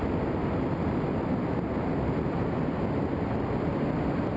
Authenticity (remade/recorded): recorded